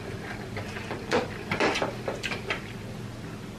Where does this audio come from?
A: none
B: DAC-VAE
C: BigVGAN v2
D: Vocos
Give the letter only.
A